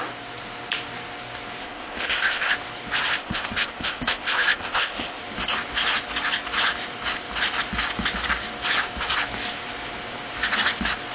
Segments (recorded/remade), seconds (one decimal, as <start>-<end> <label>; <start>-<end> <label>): 0.0-1.6 recorded; 1.6-2.5 remade; 2.5-3.2 recorded; 3.2-5.2 remade; 5.2-11.1 recorded